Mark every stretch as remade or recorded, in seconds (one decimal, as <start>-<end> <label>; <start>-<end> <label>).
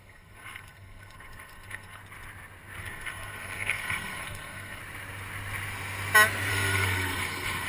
0.0-2.0 remade; 2.0-2.8 recorded; 2.8-4.8 remade; 4.8-6.5 recorded; 6.5-7.7 remade